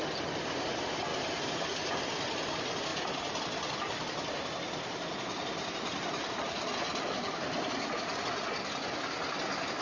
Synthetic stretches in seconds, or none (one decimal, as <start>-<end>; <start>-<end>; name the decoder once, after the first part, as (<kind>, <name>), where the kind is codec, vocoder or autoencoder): 1.1-2.0 (vocoder, BigVGAN v2)